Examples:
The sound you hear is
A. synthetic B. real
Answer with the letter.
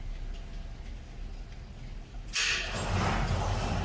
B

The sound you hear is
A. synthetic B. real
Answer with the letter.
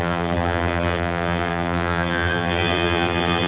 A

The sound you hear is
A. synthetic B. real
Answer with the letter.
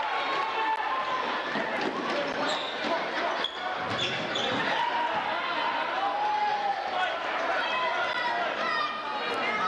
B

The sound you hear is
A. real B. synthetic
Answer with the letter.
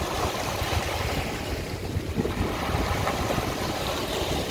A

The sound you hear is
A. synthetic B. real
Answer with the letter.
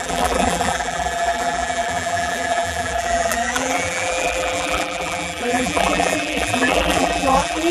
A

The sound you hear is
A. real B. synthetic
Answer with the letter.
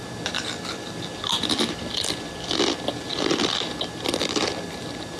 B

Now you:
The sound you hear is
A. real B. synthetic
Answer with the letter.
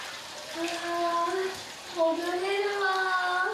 A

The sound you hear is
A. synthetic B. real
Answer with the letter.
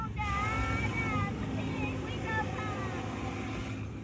B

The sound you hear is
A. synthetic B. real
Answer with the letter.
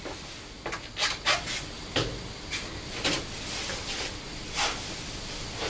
B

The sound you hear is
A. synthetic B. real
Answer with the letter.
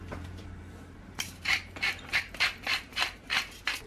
A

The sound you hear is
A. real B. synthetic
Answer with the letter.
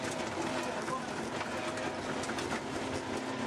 A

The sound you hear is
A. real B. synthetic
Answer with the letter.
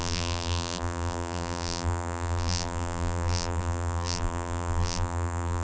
B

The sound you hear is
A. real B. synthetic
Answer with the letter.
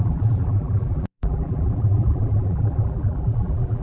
B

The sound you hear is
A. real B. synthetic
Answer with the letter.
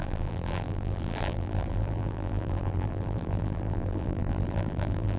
B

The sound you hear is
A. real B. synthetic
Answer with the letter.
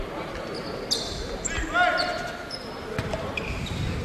A